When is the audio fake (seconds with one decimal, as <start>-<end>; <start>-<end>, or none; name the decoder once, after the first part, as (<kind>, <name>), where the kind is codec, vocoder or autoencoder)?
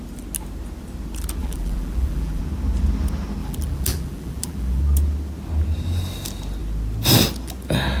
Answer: 1.4-2.4 (vocoder, BigVGAN v2); 3.4-4.8